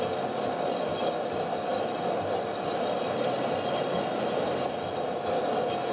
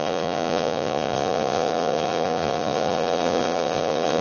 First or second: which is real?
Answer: first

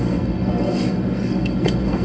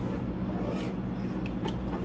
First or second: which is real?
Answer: second